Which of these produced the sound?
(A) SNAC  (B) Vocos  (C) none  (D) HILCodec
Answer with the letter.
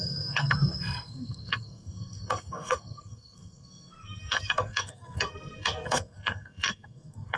A